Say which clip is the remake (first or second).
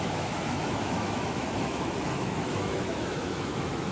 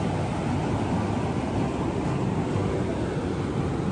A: first